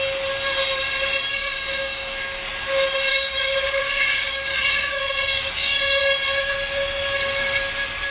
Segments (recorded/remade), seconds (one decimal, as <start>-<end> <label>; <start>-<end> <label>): 0.0-1.3 recorded; 1.3-2.5 remade; 2.5-3.1 recorded; 3.1-6.0 remade; 6.0-8.1 recorded